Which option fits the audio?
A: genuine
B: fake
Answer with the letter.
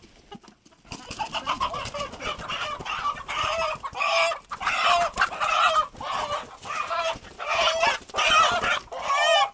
A